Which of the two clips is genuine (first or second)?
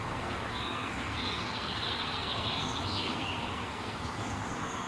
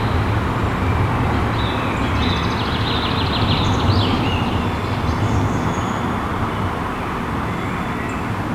second